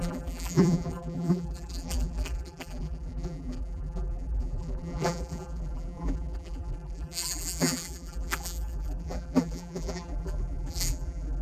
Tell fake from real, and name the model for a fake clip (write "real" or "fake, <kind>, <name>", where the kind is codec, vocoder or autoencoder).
fake, vocoder, BigVGAN v2